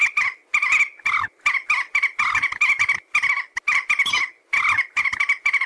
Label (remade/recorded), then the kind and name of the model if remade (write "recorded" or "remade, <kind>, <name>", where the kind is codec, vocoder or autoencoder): recorded